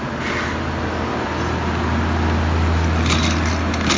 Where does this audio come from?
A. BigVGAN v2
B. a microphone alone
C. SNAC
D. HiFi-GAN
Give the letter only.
B